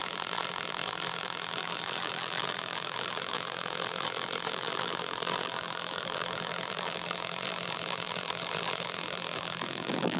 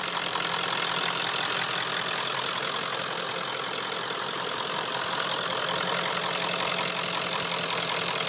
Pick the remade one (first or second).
first